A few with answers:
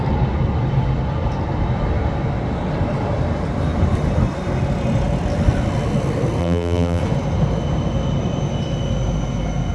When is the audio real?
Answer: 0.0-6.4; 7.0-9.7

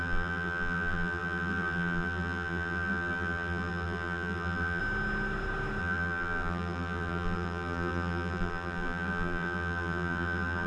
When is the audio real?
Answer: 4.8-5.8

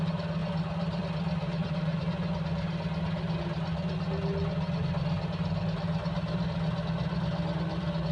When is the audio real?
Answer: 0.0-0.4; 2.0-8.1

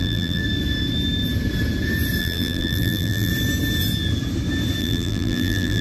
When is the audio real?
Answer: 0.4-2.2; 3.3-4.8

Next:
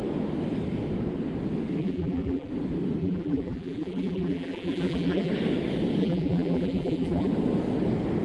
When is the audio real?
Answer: 0.0-1.8; 2.5-3.0; 5.3-6.0; 7.3-8.2